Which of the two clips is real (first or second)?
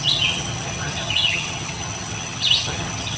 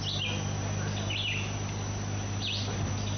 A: second